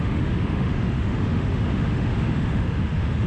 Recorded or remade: remade